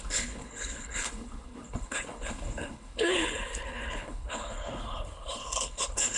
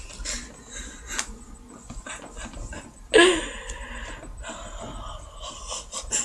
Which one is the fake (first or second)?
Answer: first